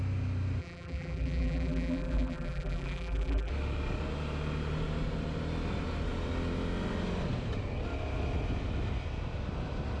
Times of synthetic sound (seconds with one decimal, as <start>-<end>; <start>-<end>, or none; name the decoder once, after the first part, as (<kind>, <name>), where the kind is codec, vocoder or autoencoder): 0.6-3.5 (vocoder, BigVGAN v2)

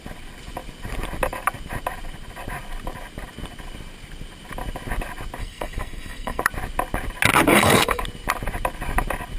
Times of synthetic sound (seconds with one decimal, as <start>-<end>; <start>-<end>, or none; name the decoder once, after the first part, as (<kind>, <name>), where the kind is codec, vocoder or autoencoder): 5.4-6.4 (codec, SNAC); 7.5-8.0

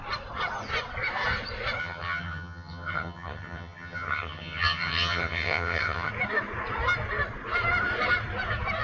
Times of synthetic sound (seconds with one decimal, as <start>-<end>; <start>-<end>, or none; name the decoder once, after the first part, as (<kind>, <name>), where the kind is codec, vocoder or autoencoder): 1.8-6.1 (vocoder, HiFi-GAN)

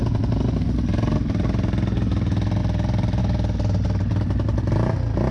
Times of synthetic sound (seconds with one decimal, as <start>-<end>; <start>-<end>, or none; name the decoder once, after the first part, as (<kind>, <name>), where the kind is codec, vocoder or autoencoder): none